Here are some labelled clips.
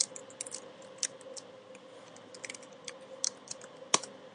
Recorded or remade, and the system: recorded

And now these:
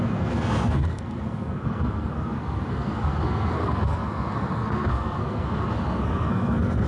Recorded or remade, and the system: remade, codec, SNAC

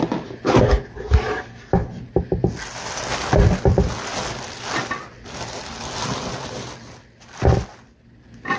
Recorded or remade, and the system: recorded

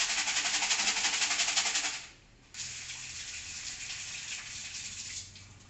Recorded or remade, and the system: recorded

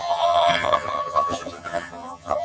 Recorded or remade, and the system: remade, vocoder, HiFi-GAN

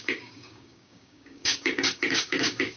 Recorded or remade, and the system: remade, codec, DAC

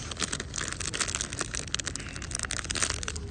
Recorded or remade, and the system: recorded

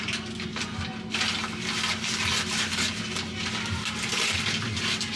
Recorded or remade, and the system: recorded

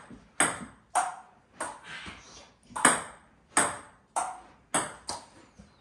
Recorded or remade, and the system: recorded